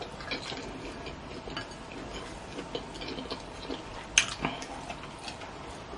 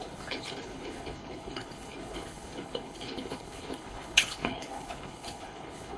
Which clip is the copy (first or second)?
second